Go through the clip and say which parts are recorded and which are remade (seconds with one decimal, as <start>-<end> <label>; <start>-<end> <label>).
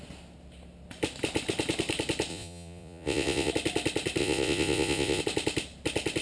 0.0-2.3 recorded; 2.3-3.5 remade; 3.5-4.2 recorded; 4.2-5.2 remade; 5.2-6.2 recorded